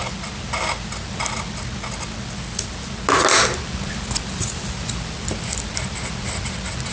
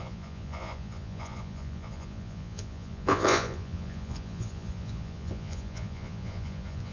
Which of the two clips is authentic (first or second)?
first